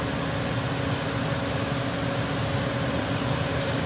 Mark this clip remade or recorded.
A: recorded